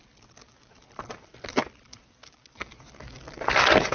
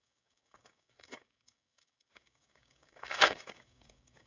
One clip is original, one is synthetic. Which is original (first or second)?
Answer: first